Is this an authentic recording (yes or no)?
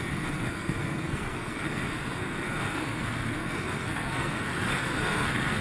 no